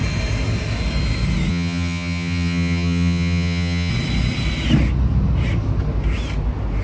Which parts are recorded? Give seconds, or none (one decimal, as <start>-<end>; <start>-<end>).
0.0-1.5; 3.9-6.8